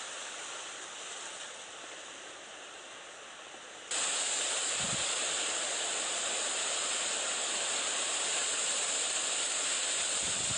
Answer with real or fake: real